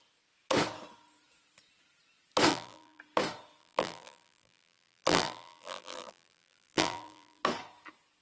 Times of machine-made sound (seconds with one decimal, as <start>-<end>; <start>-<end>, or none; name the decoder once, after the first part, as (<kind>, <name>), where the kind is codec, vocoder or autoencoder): 2.5-3.0 (vocoder, BigVGAN v2); 3.6-7.4